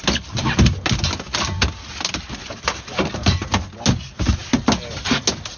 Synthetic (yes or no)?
no